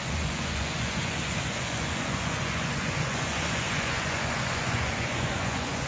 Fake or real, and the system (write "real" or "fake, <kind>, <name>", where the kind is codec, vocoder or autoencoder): fake, vocoder, Vocos